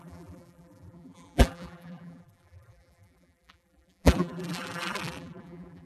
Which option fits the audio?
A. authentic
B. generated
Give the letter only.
B